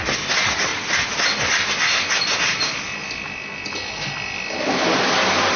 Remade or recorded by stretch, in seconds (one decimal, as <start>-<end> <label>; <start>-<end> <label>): 0.0-5.6 recorded